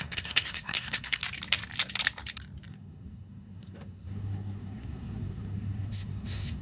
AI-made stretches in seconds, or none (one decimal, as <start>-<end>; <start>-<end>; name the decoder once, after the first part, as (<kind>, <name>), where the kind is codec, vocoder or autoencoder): 0.0-1.2 (codec, SNAC); 2.7-6.6